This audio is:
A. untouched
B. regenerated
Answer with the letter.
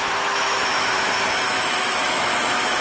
B